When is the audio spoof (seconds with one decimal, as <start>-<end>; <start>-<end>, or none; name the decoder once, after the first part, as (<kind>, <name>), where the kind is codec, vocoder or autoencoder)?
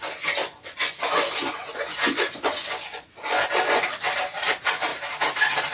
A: 0.4-3.8 (vocoder, Vocos)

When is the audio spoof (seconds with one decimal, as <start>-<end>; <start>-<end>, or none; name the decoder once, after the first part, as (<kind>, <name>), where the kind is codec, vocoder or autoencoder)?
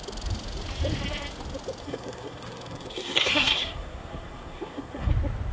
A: 1.8-5.1 (codec, SNAC)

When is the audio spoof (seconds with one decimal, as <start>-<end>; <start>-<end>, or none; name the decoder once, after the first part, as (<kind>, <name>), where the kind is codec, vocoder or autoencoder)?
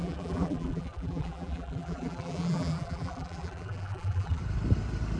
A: 0.0-4.4 (vocoder, BigVGAN v2)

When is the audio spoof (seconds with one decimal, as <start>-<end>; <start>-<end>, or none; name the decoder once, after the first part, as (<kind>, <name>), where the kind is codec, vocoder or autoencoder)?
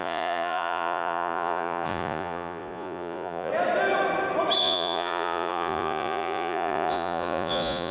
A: 0.0-3.5 (vocoder, Vocos); 4.6-7.9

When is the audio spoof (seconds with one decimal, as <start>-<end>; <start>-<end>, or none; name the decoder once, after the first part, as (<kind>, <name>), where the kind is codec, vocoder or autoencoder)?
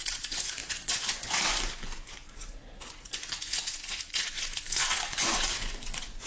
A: 0.0-6.3 (vocoder, Vocos)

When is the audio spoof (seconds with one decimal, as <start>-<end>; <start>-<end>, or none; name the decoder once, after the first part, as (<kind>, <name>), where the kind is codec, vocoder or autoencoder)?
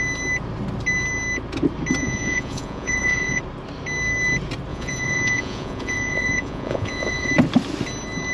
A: 2.0-3.4 (vocoder, Vocos); 4.7-7.3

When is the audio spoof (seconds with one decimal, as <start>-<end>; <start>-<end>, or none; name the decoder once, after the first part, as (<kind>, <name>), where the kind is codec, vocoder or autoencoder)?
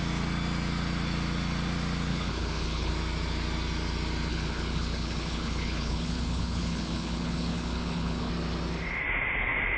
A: 2.1-2.9 (codec, HILCodec); 4.3-8.3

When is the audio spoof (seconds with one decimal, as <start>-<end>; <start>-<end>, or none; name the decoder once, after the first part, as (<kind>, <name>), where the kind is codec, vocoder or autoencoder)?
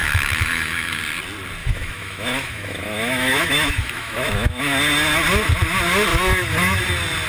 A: 0.0-1.0 (autoencoder, DAC-VAE); 1.6-4.6; 6.1-6.8